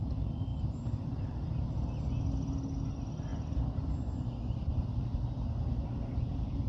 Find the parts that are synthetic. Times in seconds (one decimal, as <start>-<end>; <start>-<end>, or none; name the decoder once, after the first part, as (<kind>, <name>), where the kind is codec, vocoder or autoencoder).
0.5-1.5 (vocoder, BigVGAN v2)